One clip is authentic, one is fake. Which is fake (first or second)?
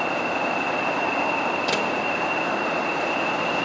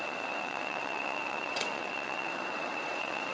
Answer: second